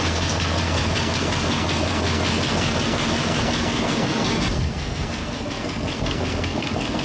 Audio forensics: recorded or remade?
remade